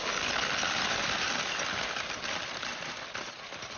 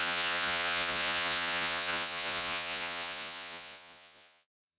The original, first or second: first